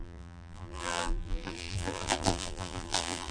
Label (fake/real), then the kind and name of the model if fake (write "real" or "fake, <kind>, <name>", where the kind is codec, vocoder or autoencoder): fake, vocoder, BigVGAN v2